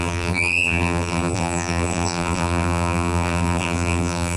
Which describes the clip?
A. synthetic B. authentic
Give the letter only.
A